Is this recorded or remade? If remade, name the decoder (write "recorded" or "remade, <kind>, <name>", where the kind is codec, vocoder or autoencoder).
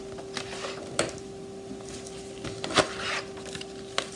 recorded